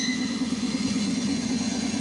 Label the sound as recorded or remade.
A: remade